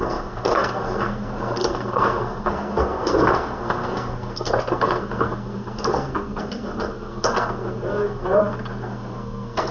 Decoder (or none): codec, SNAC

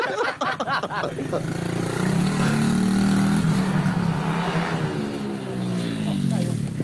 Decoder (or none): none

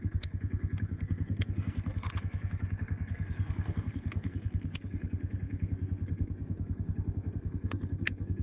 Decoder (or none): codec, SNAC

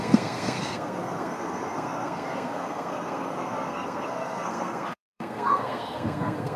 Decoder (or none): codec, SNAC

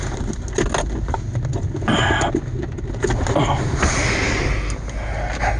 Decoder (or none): none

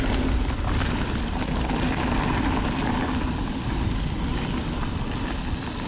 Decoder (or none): none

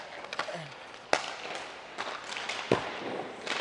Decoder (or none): none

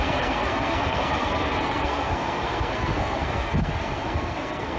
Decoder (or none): codec, SNAC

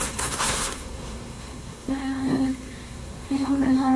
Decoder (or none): codec, SNAC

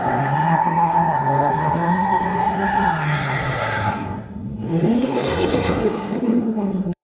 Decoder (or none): codec, SNAC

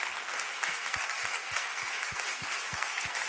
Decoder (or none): codec, SNAC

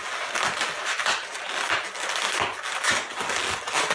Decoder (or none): none